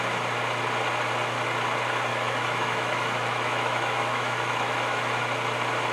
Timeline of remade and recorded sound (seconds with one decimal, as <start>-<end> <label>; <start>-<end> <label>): 0.0-2.1 recorded; 2.1-5.2 remade; 5.2-5.9 recorded